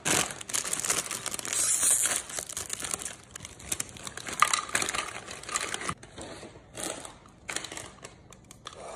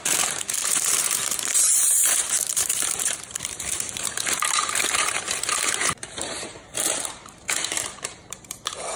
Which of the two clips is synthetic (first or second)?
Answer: second